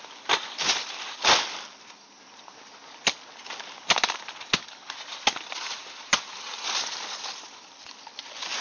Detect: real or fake real